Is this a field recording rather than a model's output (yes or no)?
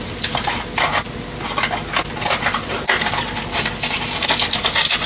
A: yes